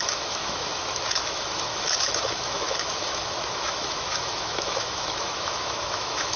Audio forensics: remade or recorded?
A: remade